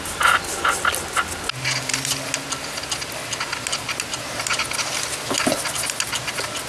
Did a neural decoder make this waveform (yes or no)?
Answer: no